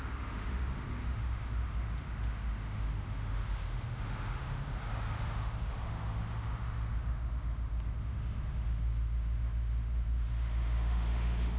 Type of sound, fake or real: fake